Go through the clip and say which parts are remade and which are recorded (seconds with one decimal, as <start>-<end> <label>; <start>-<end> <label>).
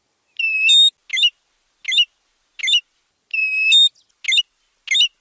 0.0-5.2 recorded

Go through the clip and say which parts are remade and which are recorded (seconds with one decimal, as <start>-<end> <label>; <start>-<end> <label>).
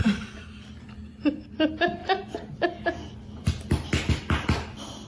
0.0-5.1 recorded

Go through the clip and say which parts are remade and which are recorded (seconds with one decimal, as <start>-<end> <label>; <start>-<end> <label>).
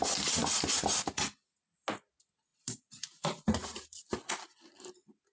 0.0-2.5 recorded; 2.5-4.3 remade; 4.3-5.3 recorded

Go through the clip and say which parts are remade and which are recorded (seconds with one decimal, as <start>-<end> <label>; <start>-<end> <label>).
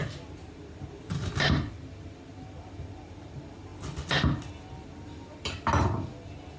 0.0-6.6 recorded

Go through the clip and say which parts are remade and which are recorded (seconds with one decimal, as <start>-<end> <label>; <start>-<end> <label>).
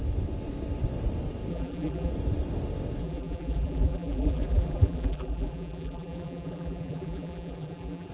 0.0-1.5 recorded; 1.5-2.1 remade; 2.1-3.0 recorded; 3.0-8.1 remade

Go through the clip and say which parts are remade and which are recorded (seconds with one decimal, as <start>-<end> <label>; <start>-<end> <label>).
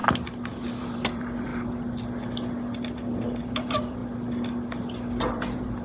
0.0-0.7 recorded; 0.7-1.5 remade; 1.5-3.4 recorded; 3.4-4.0 remade; 4.0-5.2 recorded; 5.2-5.8 remade